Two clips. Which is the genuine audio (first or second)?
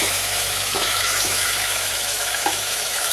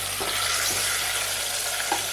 second